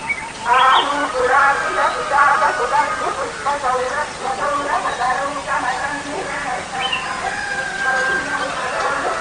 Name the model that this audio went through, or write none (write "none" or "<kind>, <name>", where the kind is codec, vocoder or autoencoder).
none